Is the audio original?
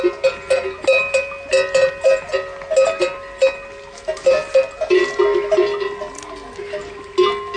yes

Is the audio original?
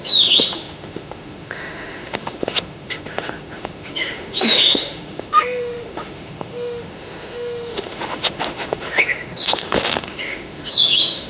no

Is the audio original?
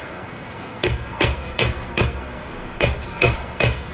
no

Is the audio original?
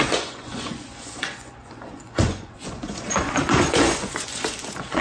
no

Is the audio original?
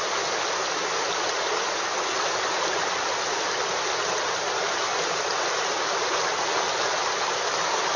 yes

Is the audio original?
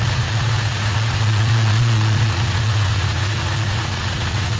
no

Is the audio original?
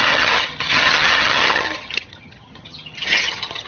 no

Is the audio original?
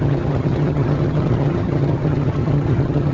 no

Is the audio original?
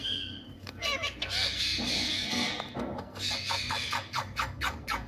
no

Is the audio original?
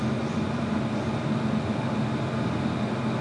yes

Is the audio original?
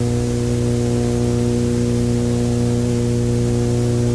yes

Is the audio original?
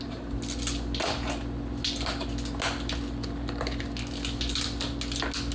yes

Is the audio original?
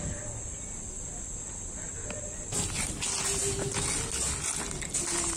yes